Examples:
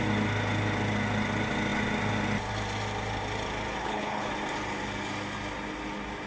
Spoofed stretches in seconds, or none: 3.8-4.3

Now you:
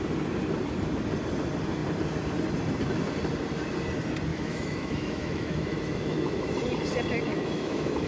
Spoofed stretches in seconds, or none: 4.3-6.5; 7.3-8.1